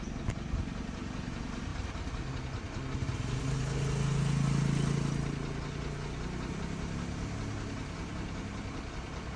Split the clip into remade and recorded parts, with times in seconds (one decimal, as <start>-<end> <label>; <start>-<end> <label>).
0.0-9.4 recorded

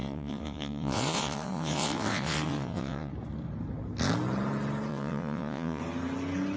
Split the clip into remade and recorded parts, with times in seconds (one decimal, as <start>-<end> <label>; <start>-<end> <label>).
0.0-3.1 remade; 3.1-4.9 recorded; 4.9-5.8 remade; 5.8-6.6 recorded